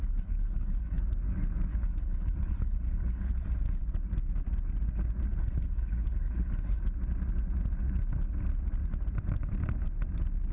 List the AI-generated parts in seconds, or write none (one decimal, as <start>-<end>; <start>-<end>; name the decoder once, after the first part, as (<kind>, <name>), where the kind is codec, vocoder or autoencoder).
0.0-1.0 (codec, HILCodec); 1.7-3.8; 5.4-6.8

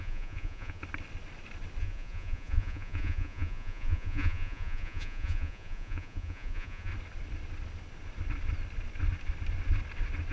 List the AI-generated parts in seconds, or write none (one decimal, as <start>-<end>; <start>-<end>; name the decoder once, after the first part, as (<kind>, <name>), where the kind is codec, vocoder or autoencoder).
0.0-0.8 (vocoder, Vocos); 1.8-6.9